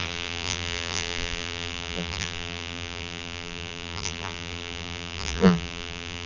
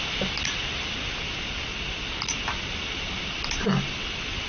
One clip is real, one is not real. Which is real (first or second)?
second